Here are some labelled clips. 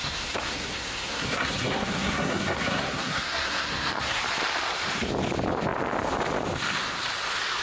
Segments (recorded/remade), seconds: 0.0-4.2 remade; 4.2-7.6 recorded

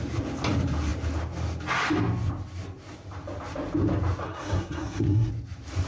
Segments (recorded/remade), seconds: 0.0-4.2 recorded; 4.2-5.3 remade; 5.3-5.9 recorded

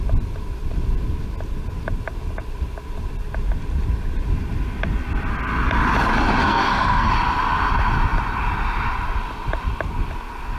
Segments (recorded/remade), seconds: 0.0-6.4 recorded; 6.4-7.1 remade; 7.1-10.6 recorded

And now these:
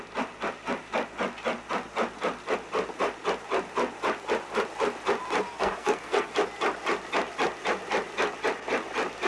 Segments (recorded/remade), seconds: 0.0-5.5 recorded; 5.5-6.3 remade; 6.3-9.3 recorded

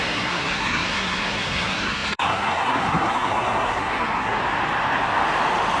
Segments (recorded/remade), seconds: 0.0-4.4 remade; 4.4-5.8 recorded

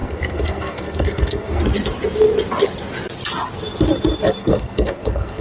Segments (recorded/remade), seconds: 0.0-1.6 remade; 1.6-4.4 recorded; 4.4-5.4 remade

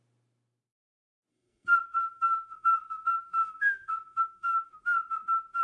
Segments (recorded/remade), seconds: 0.0-1.3 recorded; 1.3-4.7 remade; 4.7-5.6 recorded

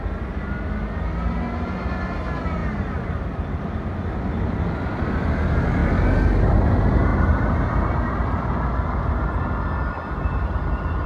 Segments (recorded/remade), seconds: 0.0-11.1 recorded